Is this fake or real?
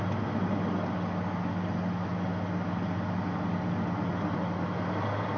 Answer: real